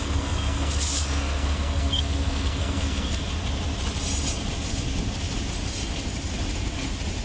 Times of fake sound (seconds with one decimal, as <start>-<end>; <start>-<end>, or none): 0.0-3.2